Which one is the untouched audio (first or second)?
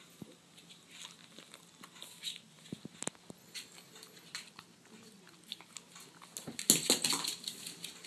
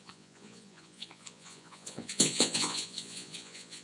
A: first